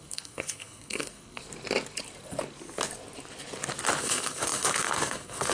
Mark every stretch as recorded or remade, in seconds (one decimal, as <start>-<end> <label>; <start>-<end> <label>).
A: 0.0-1.4 remade; 1.4-4.0 recorded; 4.0-5.5 remade